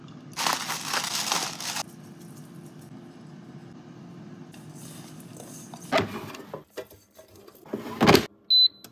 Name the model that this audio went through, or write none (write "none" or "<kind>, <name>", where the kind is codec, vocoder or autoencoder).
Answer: none